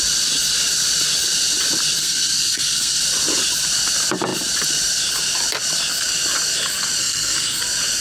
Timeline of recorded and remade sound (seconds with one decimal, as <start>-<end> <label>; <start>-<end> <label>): 0.0-2.0 recorded; 2.0-3.0 remade; 3.0-7.0 recorded; 7.0-7.6 remade; 7.6-8.0 recorded